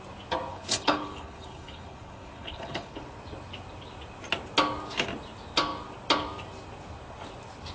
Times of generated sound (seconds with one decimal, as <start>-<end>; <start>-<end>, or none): 0.5-3.0